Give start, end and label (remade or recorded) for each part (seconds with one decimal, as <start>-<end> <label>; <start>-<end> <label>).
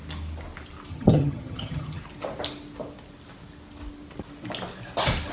0.0-0.9 recorded; 0.9-2.0 remade; 2.0-5.3 recorded